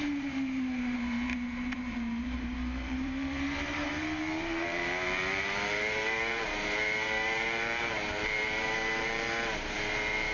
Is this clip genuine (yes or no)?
no